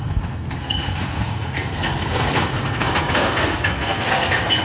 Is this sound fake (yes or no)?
yes